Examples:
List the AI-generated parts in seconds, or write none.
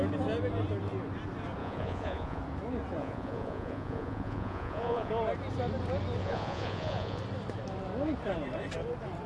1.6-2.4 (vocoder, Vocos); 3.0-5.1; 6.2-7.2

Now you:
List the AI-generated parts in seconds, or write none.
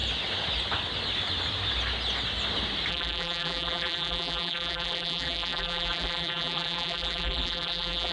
2.9-8.1 (vocoder, BigVGAN v2)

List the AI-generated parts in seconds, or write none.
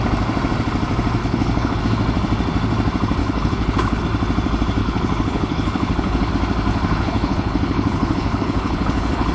1.2-1.8 (codec, HILCodec); 3.2-4.0; 4.8-6.3; 6.7-9.3